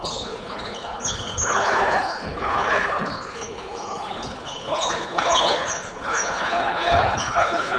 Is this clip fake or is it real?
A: fake